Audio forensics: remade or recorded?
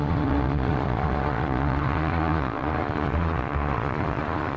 remade